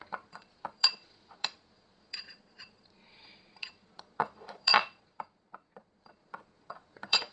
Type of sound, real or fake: fake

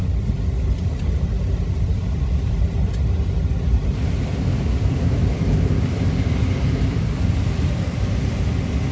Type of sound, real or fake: real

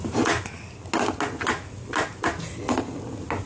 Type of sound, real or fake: real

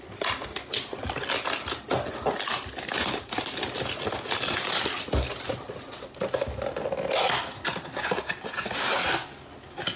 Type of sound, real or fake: real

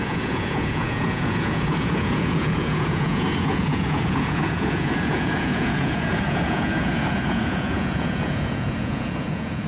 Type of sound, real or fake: fake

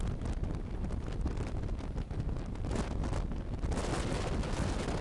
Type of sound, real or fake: real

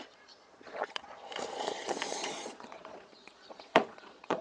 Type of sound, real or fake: fake